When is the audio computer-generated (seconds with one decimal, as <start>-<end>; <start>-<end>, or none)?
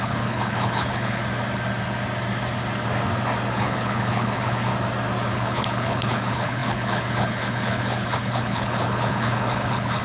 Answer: 0.0-1.2; 3.5-4.7; 5.3-10.0